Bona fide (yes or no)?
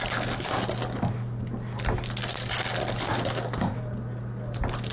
yes